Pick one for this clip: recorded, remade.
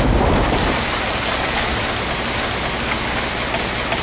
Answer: recorded